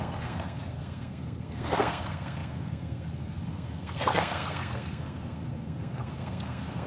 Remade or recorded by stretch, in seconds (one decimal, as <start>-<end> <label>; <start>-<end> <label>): 0.0-6.9 remade